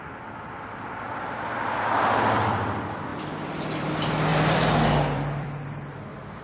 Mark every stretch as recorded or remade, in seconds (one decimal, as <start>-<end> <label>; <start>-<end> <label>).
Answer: 0.0-3.1 recorded; 3.1-3.8 remade; 3.8-4.3 recorded; 4.3-6.4 remade